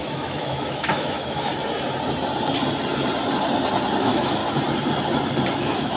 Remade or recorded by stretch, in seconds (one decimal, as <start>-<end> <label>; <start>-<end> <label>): 0.0-1.5 remade; 1.5-4.0 recorded; 4.0-4.4 remade; 4.4-5.6 recorded; 5.6-6.0 remade